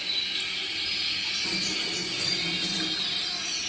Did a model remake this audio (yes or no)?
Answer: no